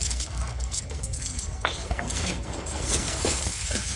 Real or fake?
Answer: fake